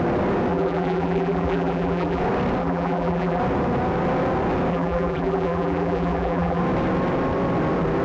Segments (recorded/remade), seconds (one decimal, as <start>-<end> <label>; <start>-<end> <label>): 0.0-0.5 recorded; 0.5-2.2 remade; 2.2-2.6 recorded; 2.6-3.4 remade; 3.4-4.7 recorded; 4.7-6.6 remade; 6.6-8.0 recorded